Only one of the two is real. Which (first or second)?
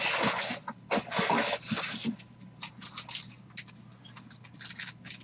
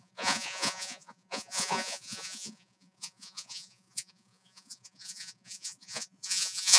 first